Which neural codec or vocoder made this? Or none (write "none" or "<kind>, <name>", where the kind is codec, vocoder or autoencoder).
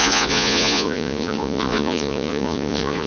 vocoder, Vocos